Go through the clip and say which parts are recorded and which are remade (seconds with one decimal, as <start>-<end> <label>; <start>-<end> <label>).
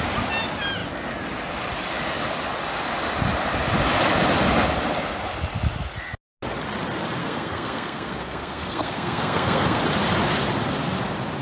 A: 0.0-7.2 recorded; 7.2-9.8 remade; 9.8-11.4 recorded